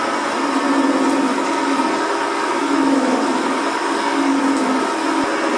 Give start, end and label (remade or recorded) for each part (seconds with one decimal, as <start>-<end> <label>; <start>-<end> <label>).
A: 0.0-1.3 recorded; 1.3-4.4 remade; 4.4-5.6 recorded